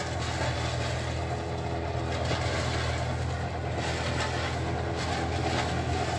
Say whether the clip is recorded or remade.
recorded